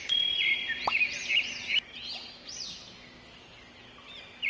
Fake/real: real